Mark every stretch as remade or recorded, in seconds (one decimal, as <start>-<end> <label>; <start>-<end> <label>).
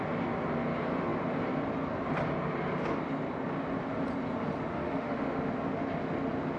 0.0-4.7 recorded; 4.7-5.5 remade; 5.5-6.6 recorded